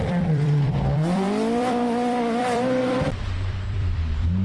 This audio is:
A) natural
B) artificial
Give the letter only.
B